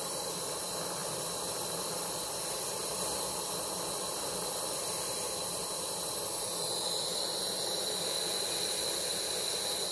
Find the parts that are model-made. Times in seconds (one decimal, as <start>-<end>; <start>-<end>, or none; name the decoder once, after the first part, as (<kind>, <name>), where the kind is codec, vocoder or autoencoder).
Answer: 1.0-1.5 (vocoder, BigVGAN v2)